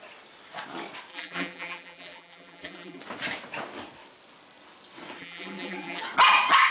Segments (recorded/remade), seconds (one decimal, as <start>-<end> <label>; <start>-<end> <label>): 0.0-1.1 recorded; 1.1-3.0 remade; 3.0-5.2 recorded; 5.2-6.0 remade; 6.0-6.7 recorded